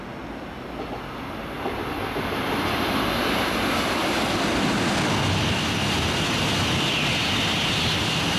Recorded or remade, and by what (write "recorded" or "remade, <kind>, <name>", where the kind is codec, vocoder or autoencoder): recorded